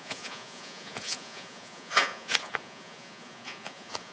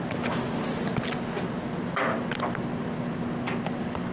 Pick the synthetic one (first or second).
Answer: first